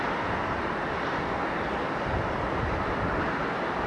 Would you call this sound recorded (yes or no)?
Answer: yes